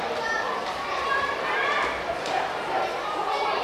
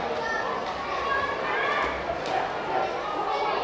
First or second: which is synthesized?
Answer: first